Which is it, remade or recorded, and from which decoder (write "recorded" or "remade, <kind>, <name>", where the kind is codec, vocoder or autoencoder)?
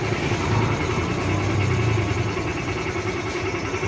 recorded